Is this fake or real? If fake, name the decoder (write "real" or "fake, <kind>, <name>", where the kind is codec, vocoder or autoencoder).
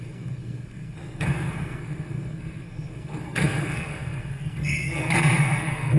fake, codec, SNAC